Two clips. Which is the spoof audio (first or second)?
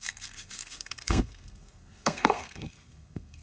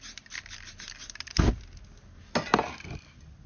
first